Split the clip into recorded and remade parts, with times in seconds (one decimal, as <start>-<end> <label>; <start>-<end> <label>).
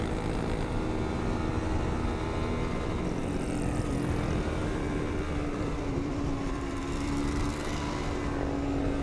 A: 0.0-3.2 recorded; 3.2-3.9 remade; 3.9-4.6 recorded; 4.6-7.2 remade; 7.2-9.0 recorded